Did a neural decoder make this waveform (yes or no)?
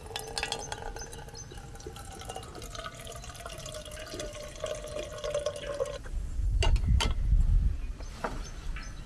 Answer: no